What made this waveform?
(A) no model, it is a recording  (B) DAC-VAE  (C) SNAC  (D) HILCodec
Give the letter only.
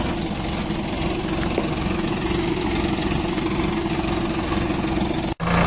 A